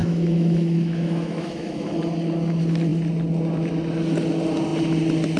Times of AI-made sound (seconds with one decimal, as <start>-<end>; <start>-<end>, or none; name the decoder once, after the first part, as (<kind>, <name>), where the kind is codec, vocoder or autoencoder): 0.0-2.0 (autoencoder, DAC-VAE)